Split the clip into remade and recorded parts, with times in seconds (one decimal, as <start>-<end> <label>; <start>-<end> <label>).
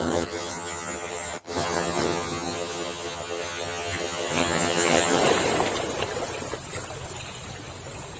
0.0-5.2 remade; 5.2-8.2 recorded